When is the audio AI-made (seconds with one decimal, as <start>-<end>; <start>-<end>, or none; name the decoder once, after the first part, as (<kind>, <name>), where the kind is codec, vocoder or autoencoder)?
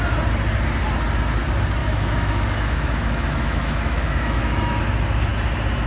1.8-4.8 (autoencoder, DAC-VAE)